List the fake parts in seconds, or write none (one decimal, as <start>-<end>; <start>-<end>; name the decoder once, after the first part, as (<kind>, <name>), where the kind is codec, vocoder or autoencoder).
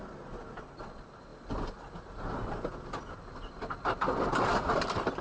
none